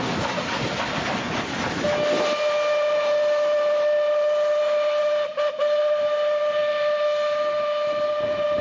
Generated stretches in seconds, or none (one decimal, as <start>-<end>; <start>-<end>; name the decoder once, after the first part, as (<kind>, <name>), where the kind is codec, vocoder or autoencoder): none